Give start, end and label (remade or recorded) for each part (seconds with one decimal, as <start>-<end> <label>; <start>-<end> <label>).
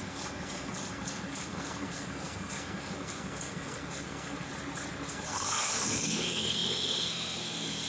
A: 0.0-4.5 remade; 4.5-5.1 recorded; 5.1-7.9 remade